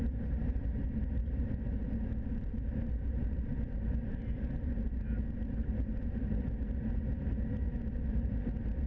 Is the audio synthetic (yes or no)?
yes